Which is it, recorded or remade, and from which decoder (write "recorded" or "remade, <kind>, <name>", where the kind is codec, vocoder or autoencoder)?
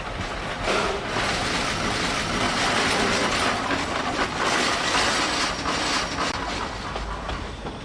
recorded